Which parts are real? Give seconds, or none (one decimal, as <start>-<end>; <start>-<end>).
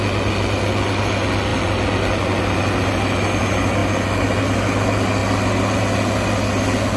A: 0.0-7.0